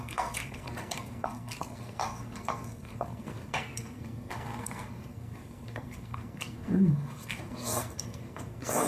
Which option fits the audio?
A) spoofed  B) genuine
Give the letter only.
A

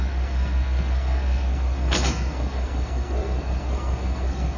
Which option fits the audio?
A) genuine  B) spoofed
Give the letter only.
B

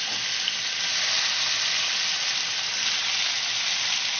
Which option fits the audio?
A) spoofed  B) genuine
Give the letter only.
B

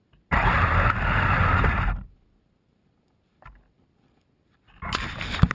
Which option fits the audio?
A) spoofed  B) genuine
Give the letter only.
B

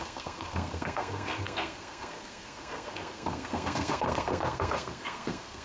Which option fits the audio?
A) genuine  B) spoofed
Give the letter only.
B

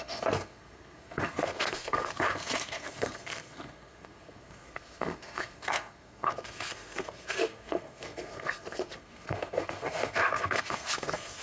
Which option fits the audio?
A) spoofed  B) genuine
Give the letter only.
A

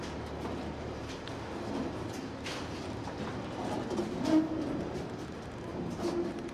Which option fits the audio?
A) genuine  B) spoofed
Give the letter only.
A